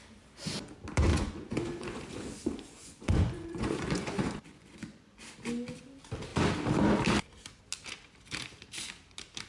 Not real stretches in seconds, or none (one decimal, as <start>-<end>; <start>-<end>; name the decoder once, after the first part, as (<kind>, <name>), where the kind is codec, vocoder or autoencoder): 1.1-5.2 (vocoder, Vocos)